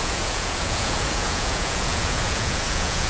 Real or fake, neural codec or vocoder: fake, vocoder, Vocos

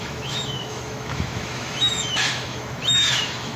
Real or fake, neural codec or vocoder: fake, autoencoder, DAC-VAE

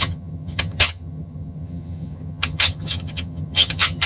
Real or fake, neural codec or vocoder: fake, vocoder, HiFi-GAN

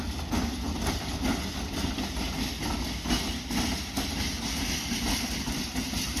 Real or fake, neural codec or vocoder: real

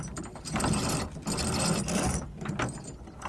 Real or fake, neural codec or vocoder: real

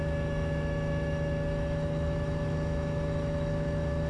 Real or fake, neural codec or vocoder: fake, autoencoder, DAC-VAE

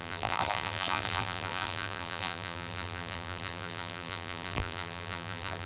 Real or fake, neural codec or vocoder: fake, vocoder, BigVGAN v2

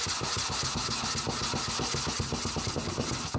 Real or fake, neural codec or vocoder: real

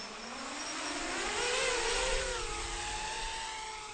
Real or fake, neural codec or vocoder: real